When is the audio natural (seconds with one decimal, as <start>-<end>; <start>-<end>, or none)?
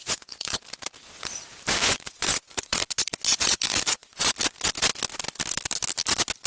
0.6-1.8; 4.3-6.5